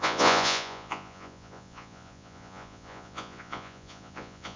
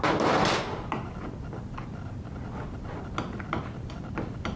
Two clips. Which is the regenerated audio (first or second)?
first